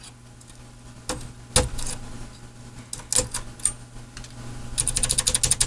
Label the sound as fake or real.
real